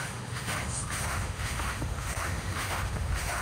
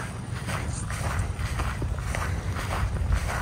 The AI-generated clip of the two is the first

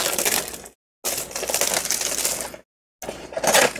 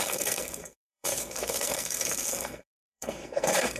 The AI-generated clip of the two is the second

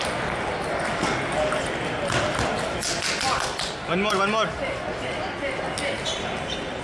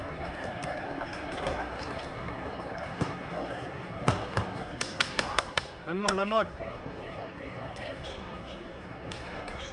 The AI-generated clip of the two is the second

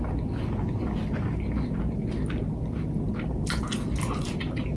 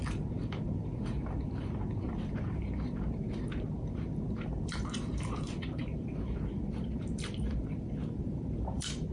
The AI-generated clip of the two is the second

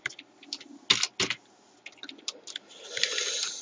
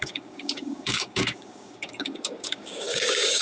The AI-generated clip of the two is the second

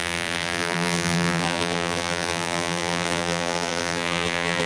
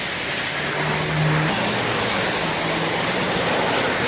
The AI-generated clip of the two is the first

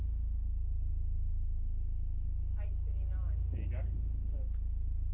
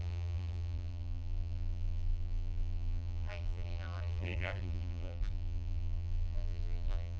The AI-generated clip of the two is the second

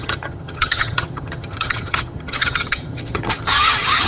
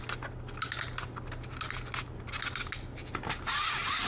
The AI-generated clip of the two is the first